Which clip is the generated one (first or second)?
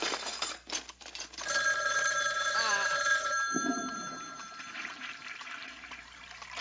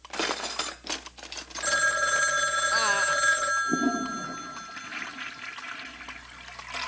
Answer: first